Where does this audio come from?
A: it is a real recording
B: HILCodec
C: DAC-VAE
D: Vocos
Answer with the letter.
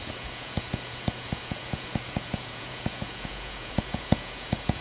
D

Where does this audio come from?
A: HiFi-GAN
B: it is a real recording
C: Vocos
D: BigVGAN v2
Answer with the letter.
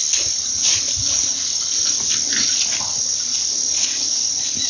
B